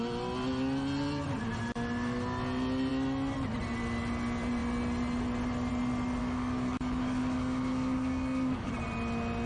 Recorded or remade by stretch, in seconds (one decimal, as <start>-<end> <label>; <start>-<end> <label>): 0.0-6.2 recorded; 6.2-8.7 remade; 8.7-9.5 recorded